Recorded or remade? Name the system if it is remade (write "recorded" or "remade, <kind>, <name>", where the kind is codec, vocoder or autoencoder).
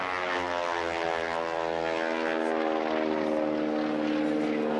recorded